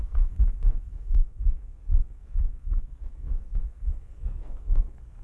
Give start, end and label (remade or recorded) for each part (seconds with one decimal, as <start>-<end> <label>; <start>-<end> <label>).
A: 0.0-5.2 remade